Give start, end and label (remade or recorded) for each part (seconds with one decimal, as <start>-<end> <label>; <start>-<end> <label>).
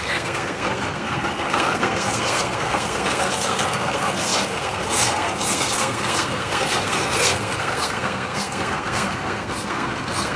0.0-10.4 remade